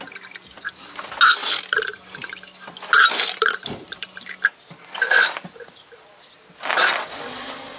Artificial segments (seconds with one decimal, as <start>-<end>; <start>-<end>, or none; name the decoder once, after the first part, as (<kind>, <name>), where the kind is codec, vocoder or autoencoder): none